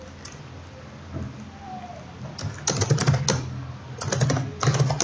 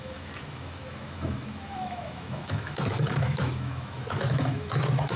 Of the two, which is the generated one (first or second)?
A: second